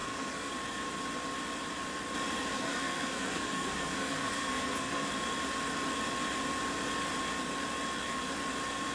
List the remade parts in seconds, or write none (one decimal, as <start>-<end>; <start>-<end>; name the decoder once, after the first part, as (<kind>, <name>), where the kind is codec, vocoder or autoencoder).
0.0-0.5 (codec, SNAC); 2.5-5.1